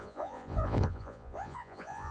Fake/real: fake